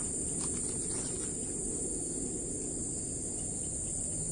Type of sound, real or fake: real